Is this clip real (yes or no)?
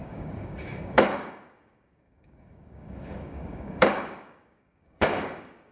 no